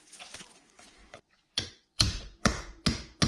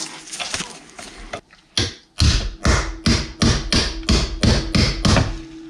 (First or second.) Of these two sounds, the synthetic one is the first